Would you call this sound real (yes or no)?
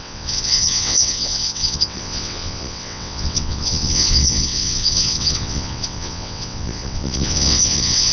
no